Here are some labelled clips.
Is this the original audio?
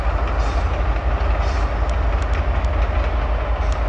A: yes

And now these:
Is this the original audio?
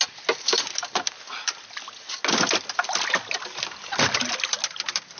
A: yes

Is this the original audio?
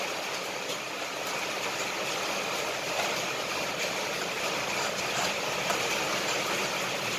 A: yes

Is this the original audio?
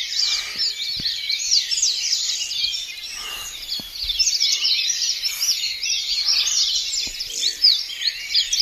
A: yes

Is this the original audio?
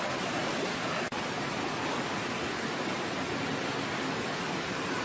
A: yes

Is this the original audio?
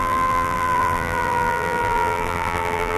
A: no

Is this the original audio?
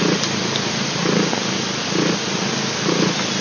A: yes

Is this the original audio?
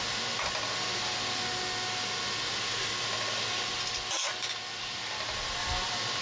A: yes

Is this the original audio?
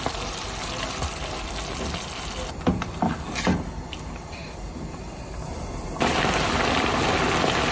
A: yes